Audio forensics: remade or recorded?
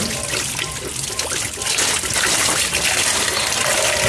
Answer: recorded